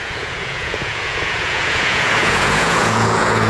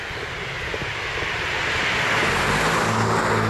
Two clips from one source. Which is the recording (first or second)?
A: second